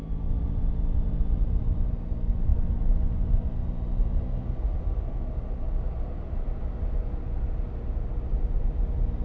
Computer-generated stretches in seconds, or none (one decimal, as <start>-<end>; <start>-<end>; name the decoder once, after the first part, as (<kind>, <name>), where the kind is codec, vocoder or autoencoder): none